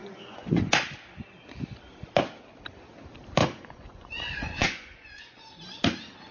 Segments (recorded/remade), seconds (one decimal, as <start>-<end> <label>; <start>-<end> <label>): 0.0-0.6 remade; 0.6-3.4 recorded; 3.4-5.5 remade; 5.5-6.3 recorded